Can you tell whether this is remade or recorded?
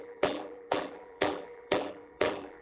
remade